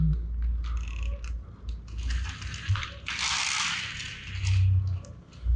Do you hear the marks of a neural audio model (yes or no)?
no